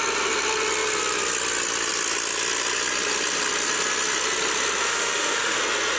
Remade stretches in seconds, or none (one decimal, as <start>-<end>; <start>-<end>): 4.9-5.6